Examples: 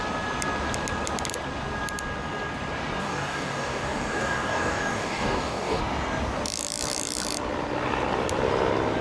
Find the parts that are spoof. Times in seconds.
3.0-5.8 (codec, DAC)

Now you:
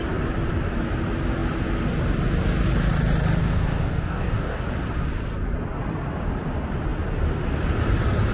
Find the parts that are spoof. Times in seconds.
3.4-4.6 (codec, DAC)

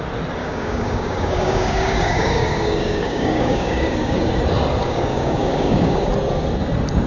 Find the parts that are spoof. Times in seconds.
0.4-4.3 (codec, DAC); 4.8-6.1